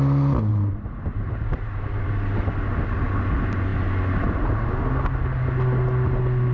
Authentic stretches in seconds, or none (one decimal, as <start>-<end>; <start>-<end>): 0.0-0.5; 2.1-6.5